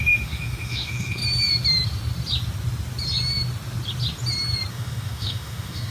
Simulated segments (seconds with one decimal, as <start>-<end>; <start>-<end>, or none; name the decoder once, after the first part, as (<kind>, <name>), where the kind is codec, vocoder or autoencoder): 0.0-1.2 (autoencoder, DAC-VAE); 4.7-5.9